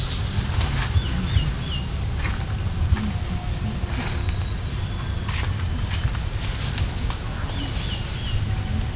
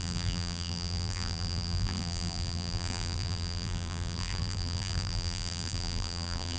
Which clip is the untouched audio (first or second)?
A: first